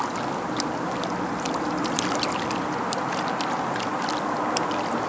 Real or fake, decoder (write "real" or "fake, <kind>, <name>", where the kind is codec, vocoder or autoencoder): real